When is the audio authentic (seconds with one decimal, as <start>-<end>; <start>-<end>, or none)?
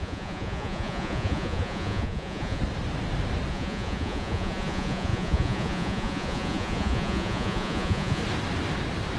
2.6-3.5; 8.2-9.2